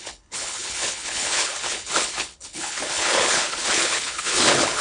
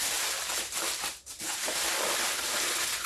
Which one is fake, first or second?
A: first